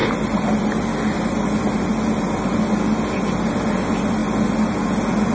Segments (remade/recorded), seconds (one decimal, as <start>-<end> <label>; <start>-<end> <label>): 0.0-5.3 recorded